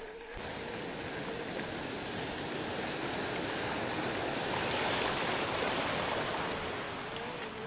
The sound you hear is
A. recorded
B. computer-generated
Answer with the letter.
A